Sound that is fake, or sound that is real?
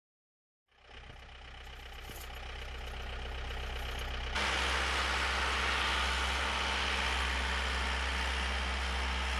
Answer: real